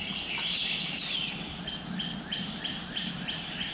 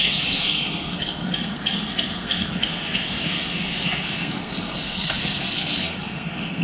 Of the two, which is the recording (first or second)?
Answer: first